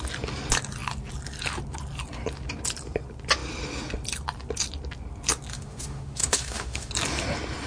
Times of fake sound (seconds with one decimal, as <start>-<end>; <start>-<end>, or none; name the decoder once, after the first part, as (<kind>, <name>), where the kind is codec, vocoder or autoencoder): 5.5-6.9 (autoencoder, DAC-VAE)